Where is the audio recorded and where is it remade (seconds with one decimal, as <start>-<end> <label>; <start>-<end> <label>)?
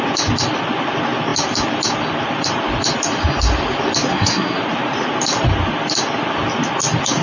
0.0-4.1 recorded; 4.1-4.6 remade; 4.6-7.2 recorded